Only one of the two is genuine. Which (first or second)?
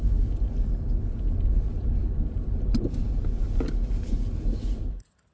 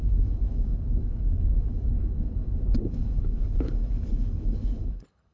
first